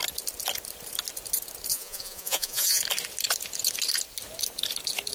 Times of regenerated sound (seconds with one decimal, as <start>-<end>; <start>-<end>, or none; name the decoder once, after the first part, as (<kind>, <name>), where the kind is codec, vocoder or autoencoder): 1.7-2.8 (vocoder, Vocos)